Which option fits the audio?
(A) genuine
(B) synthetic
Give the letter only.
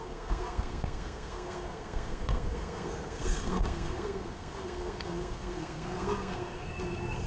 B